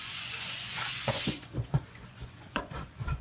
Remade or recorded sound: remade